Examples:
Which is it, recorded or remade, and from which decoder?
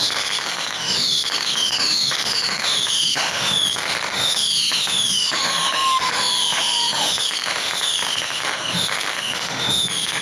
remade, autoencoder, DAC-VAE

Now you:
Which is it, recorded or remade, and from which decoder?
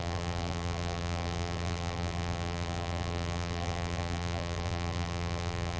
remade, vocoder, BigVGAN v2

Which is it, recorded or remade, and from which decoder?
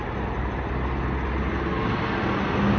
recorded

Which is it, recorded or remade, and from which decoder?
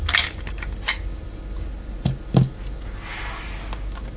recorded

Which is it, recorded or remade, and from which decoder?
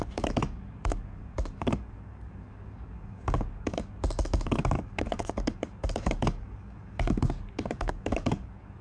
remade, codec, DAC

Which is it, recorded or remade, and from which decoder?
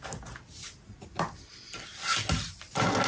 recorded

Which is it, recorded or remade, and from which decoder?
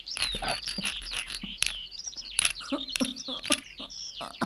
remade, vocoder, BigVGAN v2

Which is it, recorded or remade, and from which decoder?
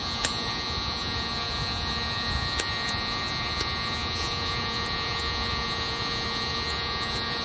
remade, vocoder, Vocos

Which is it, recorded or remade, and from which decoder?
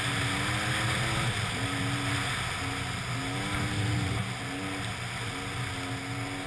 recorded